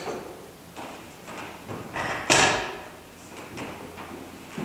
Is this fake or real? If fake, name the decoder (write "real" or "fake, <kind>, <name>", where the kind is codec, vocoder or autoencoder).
real